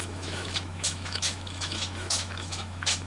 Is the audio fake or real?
fake